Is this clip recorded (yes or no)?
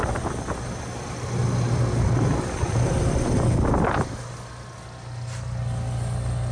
yes